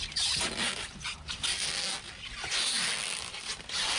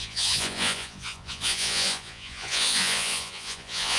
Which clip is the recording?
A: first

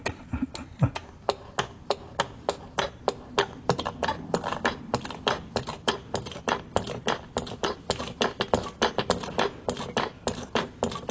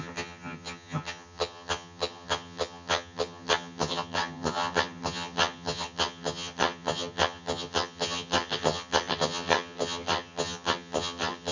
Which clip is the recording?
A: first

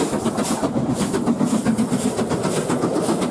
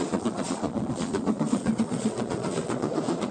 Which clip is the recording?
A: first